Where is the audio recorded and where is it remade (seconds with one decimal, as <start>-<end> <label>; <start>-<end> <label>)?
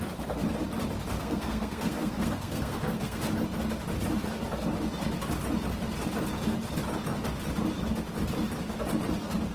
0.0-1.2 recorded; 1.2-3.2 remade; 3.2-9.5 recorded